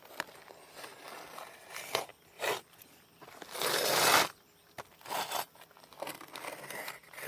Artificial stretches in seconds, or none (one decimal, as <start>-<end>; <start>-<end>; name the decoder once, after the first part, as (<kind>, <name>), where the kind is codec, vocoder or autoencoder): none